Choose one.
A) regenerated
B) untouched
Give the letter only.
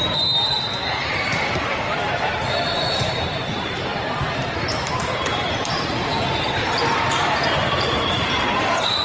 A